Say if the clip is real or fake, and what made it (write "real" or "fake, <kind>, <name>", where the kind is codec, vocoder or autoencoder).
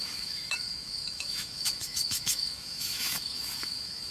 fake, autoencoder, DAC-VAE